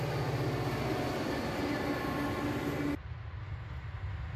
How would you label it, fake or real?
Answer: real